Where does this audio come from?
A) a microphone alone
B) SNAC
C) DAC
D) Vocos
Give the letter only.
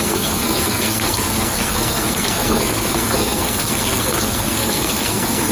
B